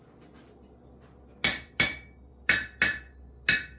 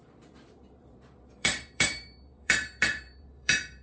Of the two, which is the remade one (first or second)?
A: second